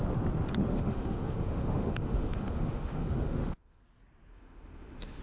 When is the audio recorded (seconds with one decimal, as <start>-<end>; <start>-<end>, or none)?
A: 0.0-0.7; 3.8-4.3